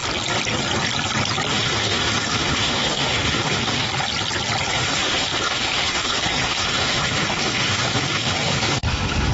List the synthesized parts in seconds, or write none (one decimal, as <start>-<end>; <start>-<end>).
1.5-3.9; 4.7-9.3